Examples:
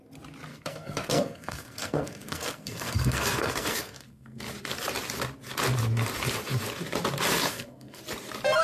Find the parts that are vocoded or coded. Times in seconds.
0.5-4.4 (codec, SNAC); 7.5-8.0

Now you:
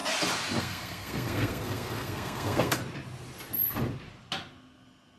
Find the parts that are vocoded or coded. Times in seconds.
0.6-2.8 (codec, SNAC)

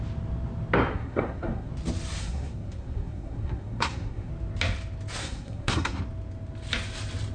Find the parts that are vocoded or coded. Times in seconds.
0.9-1.7 (codec, SNAC); 2.2-4.3; 5.2-6.0

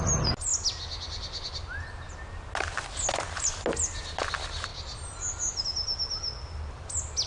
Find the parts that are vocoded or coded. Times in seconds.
none

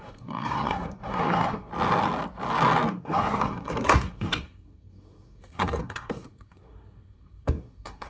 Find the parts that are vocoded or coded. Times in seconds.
0.0-1.7 (codec, SNAC); 2.9-8.1

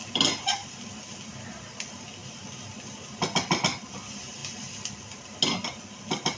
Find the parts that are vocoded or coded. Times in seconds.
none